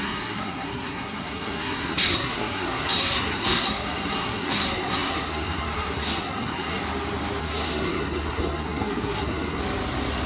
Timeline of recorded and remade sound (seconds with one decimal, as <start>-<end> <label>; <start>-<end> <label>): 0.0-6.8 remade; 6.8-7.4 recorded; 7.4-9.6 remade; 9.6-10.3 recorded